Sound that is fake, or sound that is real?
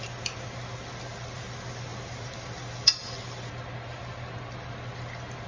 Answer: real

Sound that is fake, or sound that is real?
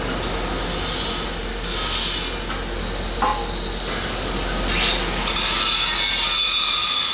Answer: real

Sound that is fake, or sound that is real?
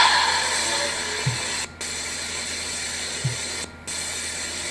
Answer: real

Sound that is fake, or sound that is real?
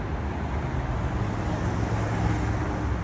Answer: real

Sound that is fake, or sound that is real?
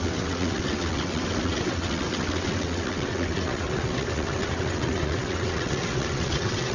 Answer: fake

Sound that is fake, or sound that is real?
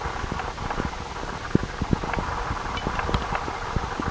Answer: real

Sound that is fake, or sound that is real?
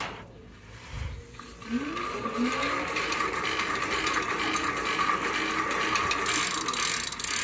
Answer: real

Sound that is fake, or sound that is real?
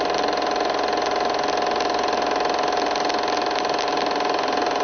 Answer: real